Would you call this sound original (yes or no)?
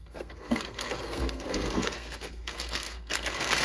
no